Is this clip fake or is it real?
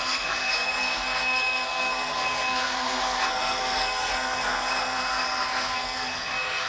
fake